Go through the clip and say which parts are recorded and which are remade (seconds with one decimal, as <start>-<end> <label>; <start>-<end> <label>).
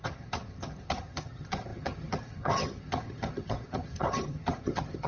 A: 0.0-5.1 remade